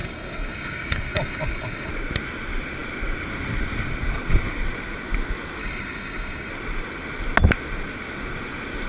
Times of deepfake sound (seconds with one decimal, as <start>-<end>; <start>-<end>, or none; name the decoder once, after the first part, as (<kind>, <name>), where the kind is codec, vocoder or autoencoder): 0.0-1.9 (codec, DAC); 5.6-6.5